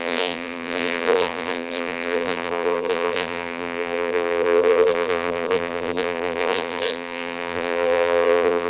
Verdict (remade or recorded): remade